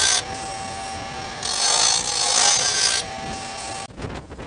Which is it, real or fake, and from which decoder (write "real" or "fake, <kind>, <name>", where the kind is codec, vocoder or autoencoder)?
real